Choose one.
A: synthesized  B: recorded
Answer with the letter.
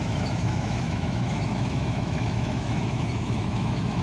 A